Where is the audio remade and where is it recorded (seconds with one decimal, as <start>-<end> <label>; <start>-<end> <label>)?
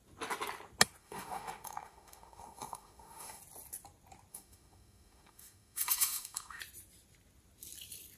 0.0-1.0 recorded; 1.0-3.4 remade; 3.4-4.3 recorded; 4.3-6.6 remade; 6.6-8.2 recorded